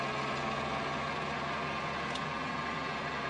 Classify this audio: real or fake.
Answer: real